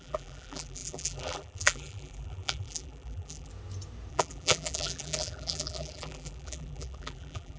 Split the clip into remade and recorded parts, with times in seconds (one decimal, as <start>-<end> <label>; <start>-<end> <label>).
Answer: 0.0-3.5 remade; 3.5-4.1 recorded; 4.1-7.6 remade